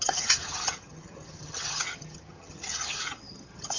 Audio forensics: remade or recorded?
remade